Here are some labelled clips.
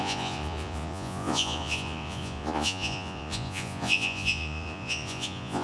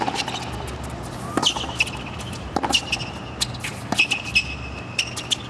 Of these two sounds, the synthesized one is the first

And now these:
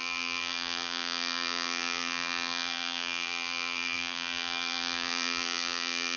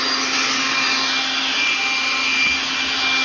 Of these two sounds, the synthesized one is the first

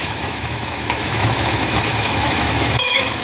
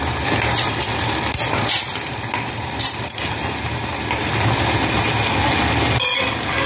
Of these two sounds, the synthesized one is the first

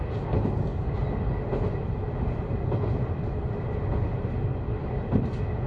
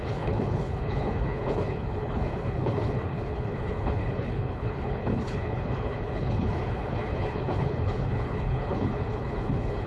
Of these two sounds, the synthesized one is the second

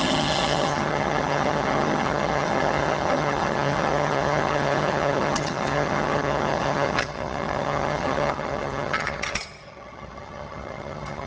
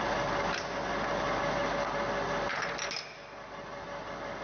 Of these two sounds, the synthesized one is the first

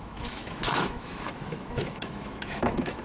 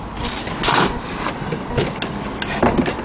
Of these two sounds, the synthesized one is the first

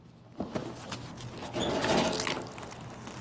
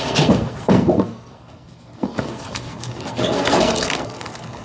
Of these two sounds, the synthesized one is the second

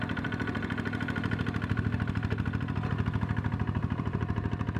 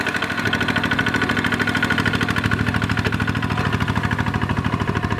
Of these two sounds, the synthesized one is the first